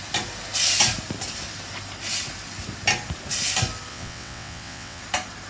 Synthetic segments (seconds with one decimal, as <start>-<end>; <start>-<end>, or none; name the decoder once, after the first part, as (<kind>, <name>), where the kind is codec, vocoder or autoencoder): 3.9-5.0 (vocoder, WaveNeXt)